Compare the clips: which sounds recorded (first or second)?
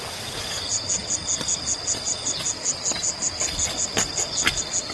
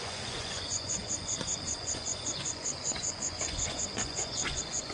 first